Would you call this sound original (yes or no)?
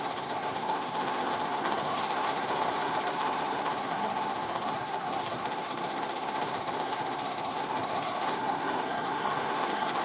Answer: no